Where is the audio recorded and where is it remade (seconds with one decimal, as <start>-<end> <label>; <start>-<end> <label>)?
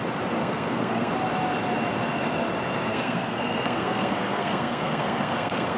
0.0-0.4 recorded; 0.4-1.1 remade; 1.1-2.9 recorded; 2.9-5.8 remade